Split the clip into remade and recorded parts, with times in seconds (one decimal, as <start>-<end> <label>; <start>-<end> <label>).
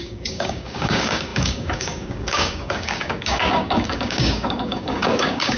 0.0-5.6 remade